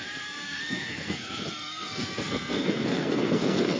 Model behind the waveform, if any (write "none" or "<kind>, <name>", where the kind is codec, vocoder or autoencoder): codec, SNAC